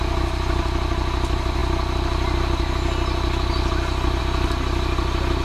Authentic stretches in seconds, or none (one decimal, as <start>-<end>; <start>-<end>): 0.0-5.4